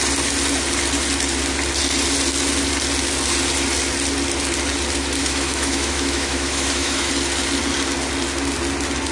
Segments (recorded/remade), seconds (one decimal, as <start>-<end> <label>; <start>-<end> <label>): 0.0-5.2 recorded; 5.2-7.1 remade; 7.1-9.1 recorded